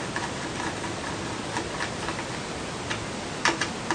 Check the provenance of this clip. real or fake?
real